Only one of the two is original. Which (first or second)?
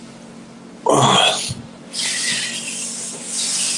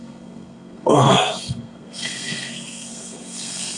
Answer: first